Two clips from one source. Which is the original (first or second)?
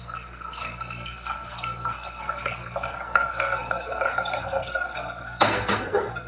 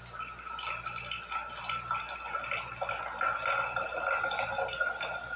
second